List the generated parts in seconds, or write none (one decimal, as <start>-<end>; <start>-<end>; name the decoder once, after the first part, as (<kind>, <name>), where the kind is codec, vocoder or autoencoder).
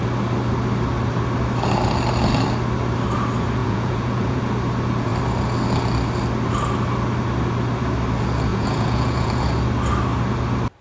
3.6-4.4 (vocoder, Vocos); 8.5-9.5